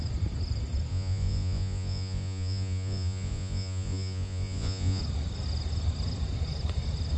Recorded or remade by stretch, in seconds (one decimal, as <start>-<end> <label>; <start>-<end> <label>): 0.0-0.9 recorded; 0.9-5.0 remade; 5.0-7.2 recorded